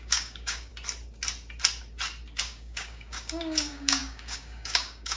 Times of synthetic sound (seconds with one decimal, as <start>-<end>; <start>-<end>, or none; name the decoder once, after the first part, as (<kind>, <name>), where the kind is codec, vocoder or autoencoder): 0.0-0.7 (codec, DAC); 2.4-5.2